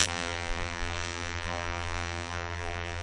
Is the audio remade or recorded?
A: remade